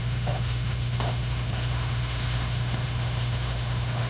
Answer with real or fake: fake